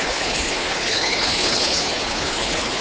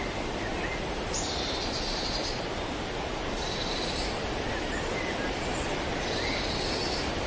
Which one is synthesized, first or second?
first